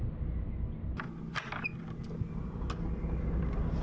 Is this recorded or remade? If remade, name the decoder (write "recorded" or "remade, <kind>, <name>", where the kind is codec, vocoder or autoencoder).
recorded